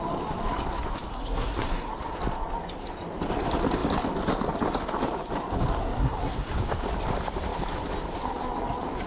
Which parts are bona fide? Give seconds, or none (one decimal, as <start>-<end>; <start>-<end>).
0.0-1.1; 1.9-5.8; 6.5-9.1